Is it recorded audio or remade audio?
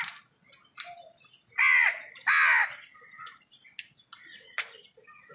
recorded